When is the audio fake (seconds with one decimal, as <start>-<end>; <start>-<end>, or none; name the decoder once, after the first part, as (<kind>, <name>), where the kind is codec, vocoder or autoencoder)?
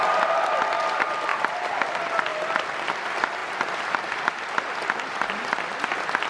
none